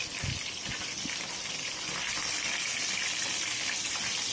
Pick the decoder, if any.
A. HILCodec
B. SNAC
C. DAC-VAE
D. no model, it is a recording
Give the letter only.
D